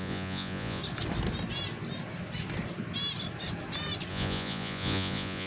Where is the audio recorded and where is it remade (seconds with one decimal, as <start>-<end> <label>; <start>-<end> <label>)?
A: 0.0-0.8 remade; 0.8-4.1 recorded; 4.1-5.5 remade